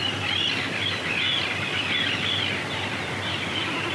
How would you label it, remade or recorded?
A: recorded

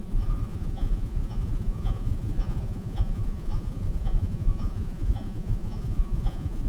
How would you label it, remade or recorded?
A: remade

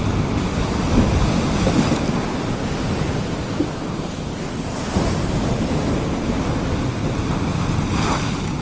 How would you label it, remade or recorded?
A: recorded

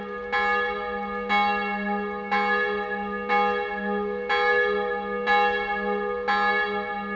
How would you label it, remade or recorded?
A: recorded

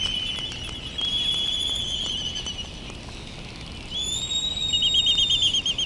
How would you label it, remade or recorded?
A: recorded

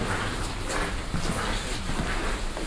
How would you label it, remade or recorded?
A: recorded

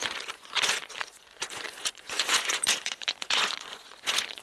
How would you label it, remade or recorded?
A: remade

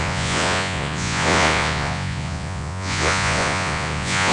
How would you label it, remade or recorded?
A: remade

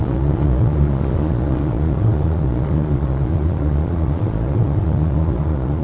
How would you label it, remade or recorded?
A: remade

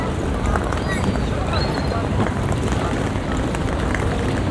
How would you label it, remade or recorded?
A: recorded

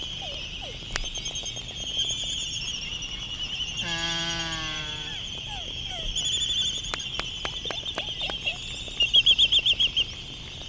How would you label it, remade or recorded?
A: recorded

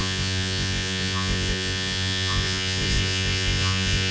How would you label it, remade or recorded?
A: remade